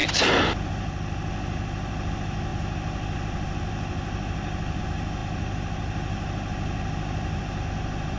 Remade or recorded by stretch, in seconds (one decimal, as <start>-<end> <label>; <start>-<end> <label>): 0.0-8.2 recorded